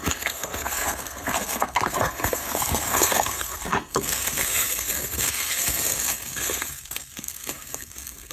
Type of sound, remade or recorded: remade